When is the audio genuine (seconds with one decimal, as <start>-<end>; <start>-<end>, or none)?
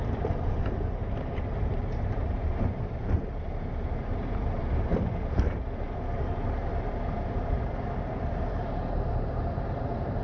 none